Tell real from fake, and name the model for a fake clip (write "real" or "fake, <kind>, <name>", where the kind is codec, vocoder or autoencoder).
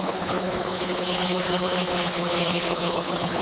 fake, codec, HILCodec